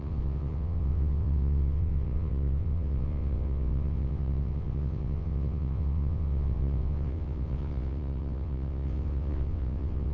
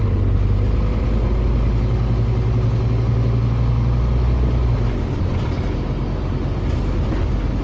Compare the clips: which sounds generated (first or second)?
first